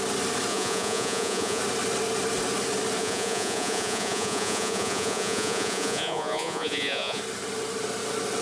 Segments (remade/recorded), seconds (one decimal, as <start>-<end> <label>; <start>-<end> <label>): 0.0-0.5 recorded; 0.5-1.6 remade; 1.6-3.0 recorded; 3.0-7.2 remade; 7.2-8.4 recorded